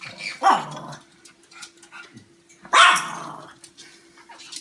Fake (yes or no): no